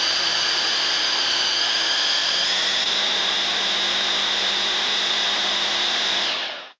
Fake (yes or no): no